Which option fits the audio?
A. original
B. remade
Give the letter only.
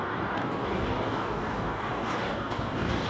B